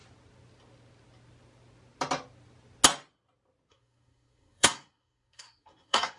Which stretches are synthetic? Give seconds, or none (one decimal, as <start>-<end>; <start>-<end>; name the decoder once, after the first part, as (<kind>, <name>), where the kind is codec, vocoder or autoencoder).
3.7-6.2 (codec, SNAC)